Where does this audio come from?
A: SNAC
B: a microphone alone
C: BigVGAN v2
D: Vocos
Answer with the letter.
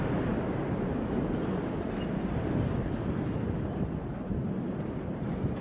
B